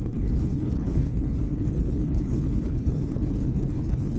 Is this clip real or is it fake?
fake